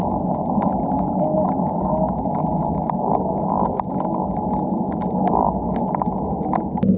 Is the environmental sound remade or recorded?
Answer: recorded